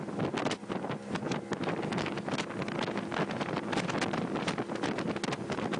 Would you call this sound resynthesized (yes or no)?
no